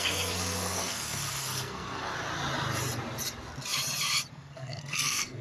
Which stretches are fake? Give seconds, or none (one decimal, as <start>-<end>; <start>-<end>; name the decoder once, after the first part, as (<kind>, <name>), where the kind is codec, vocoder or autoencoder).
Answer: 0.0-2.1 (codec, SNAC); 4.3-5.4